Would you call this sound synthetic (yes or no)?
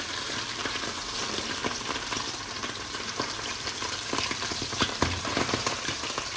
yes